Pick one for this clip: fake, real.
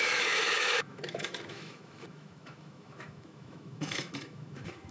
fake